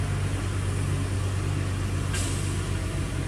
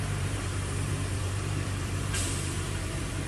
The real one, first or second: first